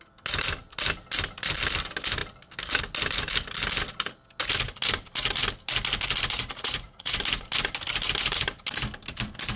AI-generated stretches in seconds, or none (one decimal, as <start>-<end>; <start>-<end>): 6.3-7.2

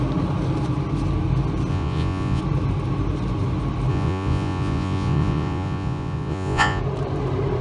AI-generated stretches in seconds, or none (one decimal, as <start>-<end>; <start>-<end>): 1.7-2.4; 3.9-6.8

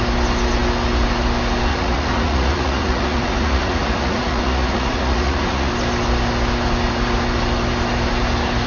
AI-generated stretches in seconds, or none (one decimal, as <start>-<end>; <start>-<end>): 1.7-5.7

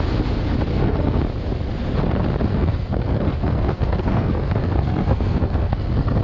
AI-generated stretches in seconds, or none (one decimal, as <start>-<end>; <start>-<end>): 0.7-1.2; 2.5-6.2

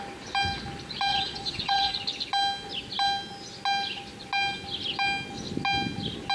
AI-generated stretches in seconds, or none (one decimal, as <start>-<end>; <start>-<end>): 1.1-1.9

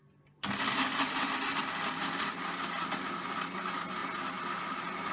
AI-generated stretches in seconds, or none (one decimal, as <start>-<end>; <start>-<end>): none

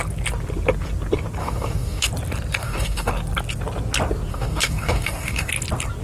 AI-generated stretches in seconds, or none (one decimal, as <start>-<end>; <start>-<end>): 1.4-2.1; 2.6-3.1; 4.3-5.5

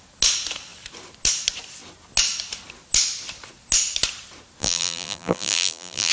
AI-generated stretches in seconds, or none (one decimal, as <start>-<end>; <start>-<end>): 4.6-6.1